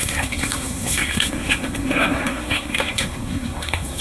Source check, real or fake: fake